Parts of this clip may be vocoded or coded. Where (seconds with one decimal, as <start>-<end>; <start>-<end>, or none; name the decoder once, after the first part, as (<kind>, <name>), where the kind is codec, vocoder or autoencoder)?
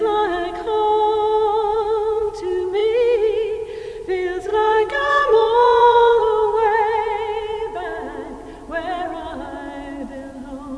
1.7-2.3 (vocoder, Vocos); 4.5-6.2